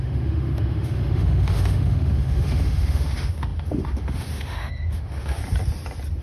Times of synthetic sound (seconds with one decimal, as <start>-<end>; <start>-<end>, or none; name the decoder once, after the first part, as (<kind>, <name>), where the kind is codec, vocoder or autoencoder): 0.0-5.4 (autoencoder, DAC-VAE)

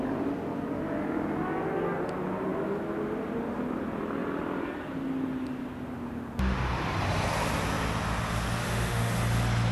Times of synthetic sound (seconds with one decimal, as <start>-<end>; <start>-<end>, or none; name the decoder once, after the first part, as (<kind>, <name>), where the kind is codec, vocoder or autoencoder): 8.6-9.1 (autoencoder, DAC-VAE)

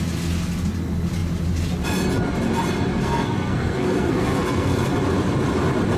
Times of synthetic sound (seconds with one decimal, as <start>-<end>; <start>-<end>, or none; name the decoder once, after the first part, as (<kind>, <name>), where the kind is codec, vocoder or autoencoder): 2.9-4.9 (codec, SNAC)